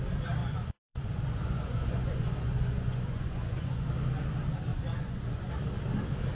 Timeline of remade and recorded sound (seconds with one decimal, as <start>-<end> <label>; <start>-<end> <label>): 0.0-0.4 recorded; 0.4-3.9 remade; 3.9-4.7 recorded; 4.7-5.5 remade; 5.5-6.3 recorded